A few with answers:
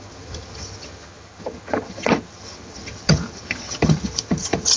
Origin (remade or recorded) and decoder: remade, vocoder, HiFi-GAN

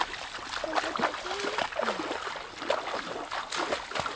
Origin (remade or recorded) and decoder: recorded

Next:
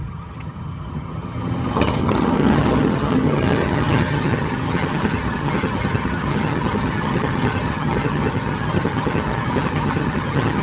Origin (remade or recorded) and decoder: remade, vocoder, HiFi-GAN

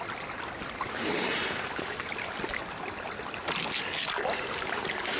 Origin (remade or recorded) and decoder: recorded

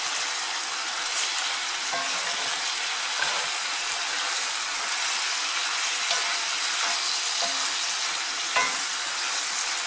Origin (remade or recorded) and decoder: recorded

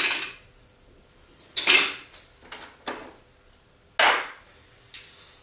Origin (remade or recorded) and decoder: recorded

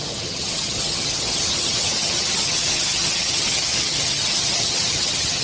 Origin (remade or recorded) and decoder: remade, vocoder, HiFi-GAN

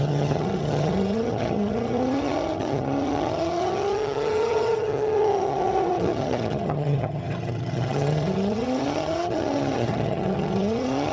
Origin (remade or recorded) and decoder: remade, vocoder, HiFi-GAN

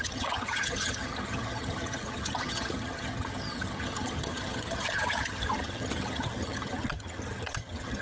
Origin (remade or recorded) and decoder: remade, vocoder, HiFi-GAN